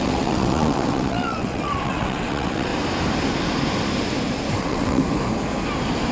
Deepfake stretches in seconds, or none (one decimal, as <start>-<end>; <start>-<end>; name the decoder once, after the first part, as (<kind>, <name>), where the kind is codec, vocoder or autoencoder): 0.0-2.7 (vocoder, WaveNeXt); 4.6-5.0